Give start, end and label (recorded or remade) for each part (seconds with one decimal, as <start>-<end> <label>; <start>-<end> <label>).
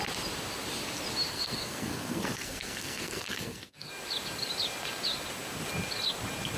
0.0-1.3 recorded; 1.3-3.9 remade; 3.9-6.6 recorded